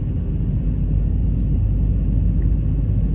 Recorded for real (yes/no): yes